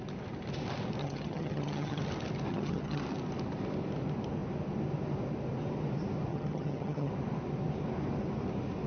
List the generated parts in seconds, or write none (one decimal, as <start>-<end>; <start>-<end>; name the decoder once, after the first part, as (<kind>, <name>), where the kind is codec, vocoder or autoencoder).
1.0-2.0 (vocoder, HiFi-GAN); 2.5-3.0; 6.3-7.1